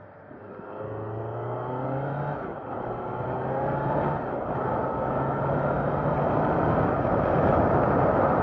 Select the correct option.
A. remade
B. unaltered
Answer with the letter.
B